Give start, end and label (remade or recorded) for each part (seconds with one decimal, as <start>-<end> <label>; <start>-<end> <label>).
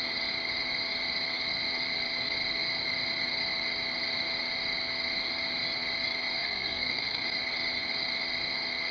0.0-6.4 recorded; 6.4-7.2 remade; 7.2-8.9 recorded